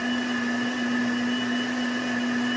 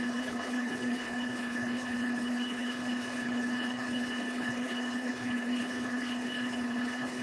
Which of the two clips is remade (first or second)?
second